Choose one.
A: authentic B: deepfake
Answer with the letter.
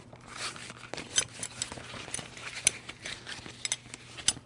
A